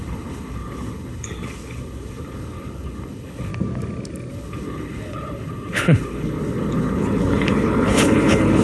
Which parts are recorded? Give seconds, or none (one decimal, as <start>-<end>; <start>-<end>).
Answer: 3.5-4.3